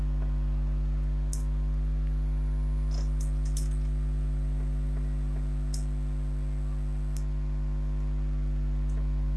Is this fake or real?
real